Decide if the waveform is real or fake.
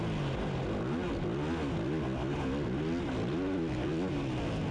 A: real